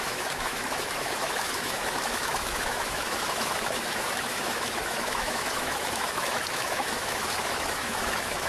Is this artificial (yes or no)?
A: yes